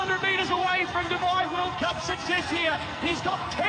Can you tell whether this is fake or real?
fake